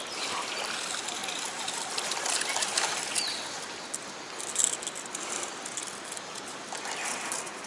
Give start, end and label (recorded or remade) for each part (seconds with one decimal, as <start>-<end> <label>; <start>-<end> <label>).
0.0-7.7 recorded